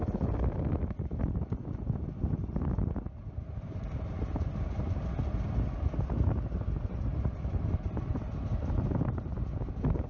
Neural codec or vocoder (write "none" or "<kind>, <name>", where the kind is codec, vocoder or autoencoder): none